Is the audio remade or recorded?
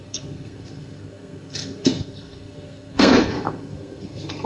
remade